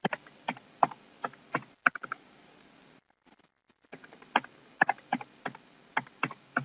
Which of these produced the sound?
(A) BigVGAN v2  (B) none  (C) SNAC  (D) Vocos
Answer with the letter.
B